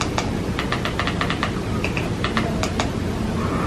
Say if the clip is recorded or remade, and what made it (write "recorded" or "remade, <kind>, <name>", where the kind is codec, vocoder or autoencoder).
recorded